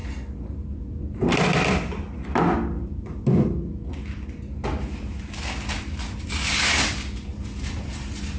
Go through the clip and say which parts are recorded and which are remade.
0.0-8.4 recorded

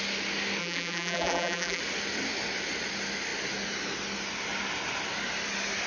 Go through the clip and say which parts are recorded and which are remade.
0.0-0.6 recorded; 0.6-1.8 remade; 1.8-5.9 recorded

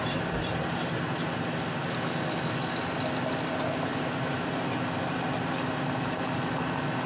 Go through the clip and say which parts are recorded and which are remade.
0.0-7.1 recorded

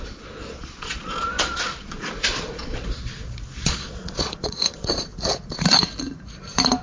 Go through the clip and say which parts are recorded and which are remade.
0.0-5.1 remade; 5.1-6.8 recorded

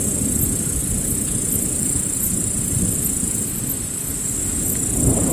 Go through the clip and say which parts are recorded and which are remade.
0.0-0.8 recorded; 0.8-3.6 remade; 3.6-5.3 recorded

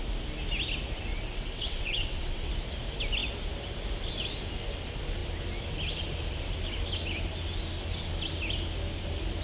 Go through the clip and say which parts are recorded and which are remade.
0.0-1.1 recorded; 1.1-2.5 remade; 2.5-9.4 recorded